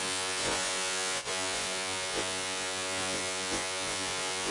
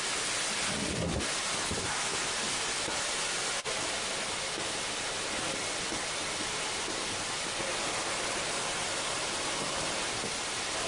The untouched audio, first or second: second